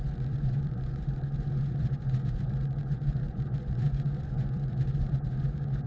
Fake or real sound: fake